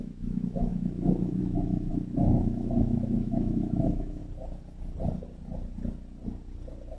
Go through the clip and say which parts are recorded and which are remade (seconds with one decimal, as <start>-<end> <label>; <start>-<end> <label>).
0.0-4.2 remade; 4.2-7.0 recorded